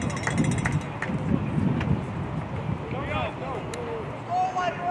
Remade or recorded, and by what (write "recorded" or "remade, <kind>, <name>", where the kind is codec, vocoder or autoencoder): recorded